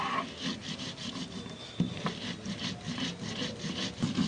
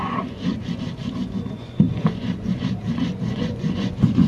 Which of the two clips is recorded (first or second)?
first